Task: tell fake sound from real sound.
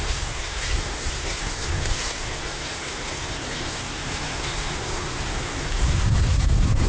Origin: fake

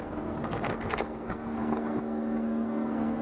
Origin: fake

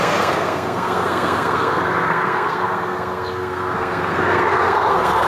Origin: fake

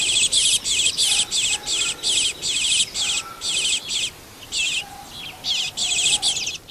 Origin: real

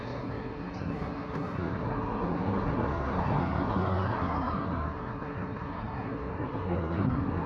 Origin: fake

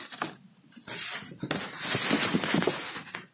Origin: real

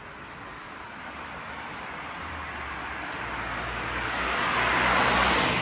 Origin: real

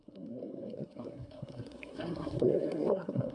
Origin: fake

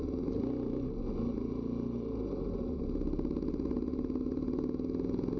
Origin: real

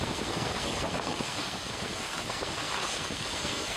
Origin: fake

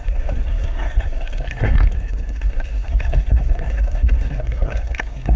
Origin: fake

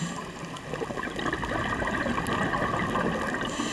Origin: real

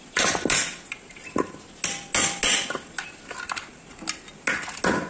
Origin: real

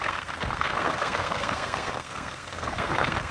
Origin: fake